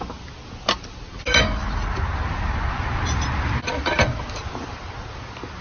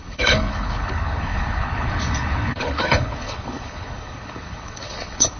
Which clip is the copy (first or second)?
second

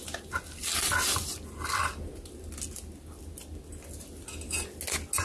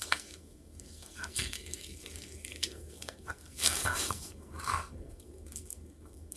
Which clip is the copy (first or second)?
second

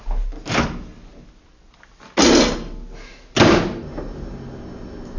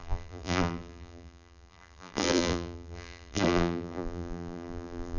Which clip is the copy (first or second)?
second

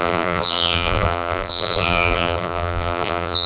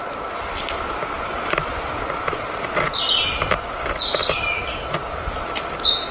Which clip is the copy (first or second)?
first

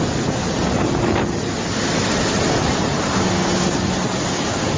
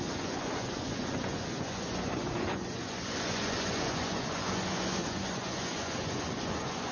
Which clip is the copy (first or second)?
second